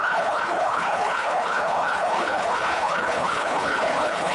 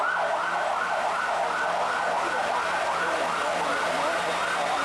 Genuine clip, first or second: second